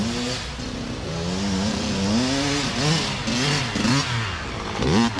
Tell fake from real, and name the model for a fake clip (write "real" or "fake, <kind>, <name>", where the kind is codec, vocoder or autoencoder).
real